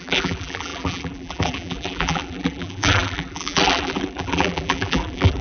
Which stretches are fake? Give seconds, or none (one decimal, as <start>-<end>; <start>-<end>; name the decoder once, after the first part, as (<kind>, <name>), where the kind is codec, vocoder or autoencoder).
0.0-5.4 (vocoder, BigVGAN v2)